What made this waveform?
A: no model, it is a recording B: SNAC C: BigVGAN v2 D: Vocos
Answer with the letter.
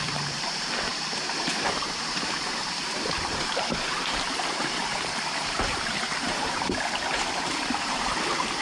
C